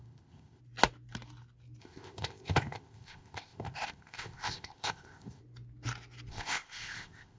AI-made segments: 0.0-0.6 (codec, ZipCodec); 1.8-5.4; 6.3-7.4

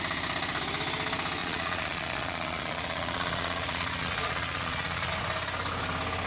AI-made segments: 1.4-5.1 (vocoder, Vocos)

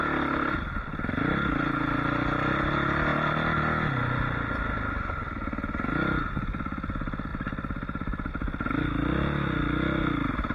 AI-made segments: 7.3-8.3 (vocoder, BigVGAN v2)